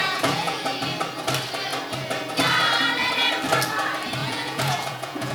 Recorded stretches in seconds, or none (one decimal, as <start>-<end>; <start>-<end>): 0.6-4.2